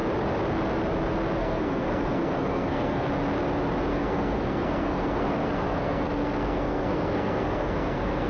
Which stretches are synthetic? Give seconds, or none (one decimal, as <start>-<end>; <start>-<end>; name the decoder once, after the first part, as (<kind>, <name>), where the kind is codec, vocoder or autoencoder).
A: 1.4-3.1 (codec, SNAC); 3.9-8.3